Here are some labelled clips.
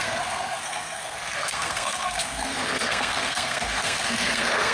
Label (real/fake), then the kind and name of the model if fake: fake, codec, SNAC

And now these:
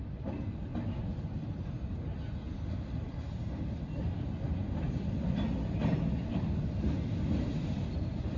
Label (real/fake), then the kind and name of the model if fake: real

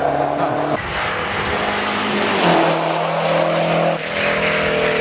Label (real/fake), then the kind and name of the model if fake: real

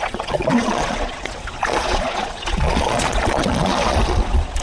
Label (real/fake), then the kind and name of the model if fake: fake, vocoder, Vocos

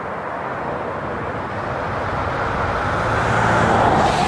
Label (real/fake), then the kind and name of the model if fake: real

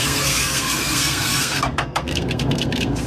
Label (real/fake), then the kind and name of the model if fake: fake, codec, SNAC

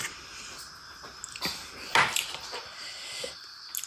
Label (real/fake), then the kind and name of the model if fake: real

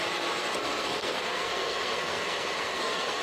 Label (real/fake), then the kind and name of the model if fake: fake, codec, SNAC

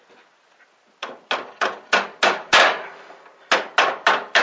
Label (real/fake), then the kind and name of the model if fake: real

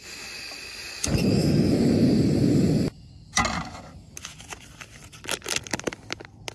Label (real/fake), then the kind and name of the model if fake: real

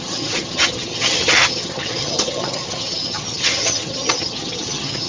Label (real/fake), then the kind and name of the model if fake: fake, vocoder, HiFi-GAN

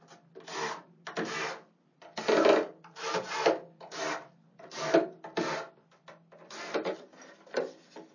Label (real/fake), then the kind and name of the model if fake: real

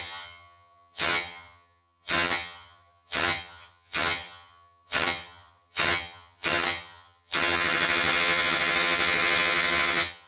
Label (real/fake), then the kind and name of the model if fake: fake, vocoder, HiFi-GAN